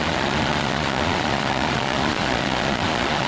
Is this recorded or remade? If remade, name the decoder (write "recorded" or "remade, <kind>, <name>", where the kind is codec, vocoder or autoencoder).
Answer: remade, vocoder, Vocos